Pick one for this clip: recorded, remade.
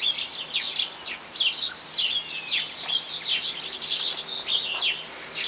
recorded